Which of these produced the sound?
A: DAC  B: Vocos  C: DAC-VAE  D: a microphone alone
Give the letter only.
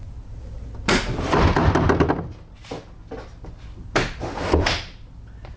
D